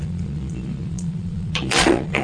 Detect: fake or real fake